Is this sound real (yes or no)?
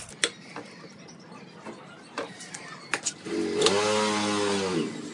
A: yes